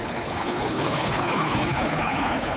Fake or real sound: fake